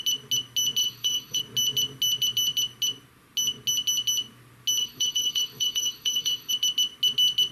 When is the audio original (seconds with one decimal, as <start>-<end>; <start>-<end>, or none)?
0.0-0.8; 1.4-4.8; 6.5-7.5